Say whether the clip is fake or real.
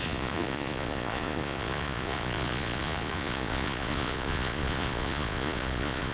fake